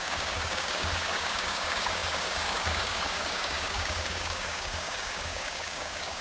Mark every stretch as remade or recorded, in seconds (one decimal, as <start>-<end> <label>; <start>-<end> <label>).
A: 0.0-6.2 remade